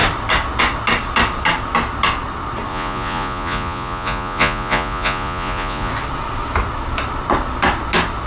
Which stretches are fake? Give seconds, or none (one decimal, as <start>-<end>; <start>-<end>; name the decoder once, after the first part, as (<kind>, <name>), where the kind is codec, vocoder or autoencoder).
2.7-5.9 (vocoder, Vocos)